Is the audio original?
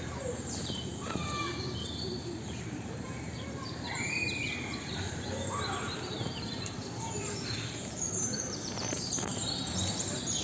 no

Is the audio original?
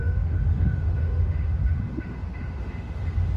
no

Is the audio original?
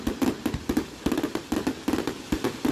yes